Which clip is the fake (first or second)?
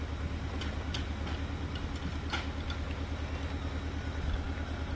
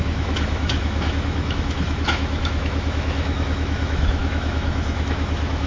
second